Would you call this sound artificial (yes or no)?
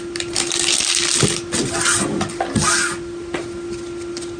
no